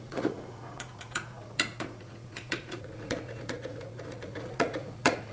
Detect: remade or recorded remade